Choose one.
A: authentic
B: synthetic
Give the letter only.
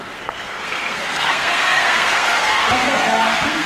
B